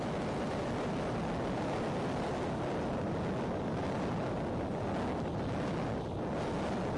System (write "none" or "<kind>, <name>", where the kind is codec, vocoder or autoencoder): none